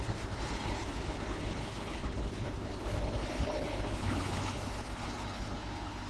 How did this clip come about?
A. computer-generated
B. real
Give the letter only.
A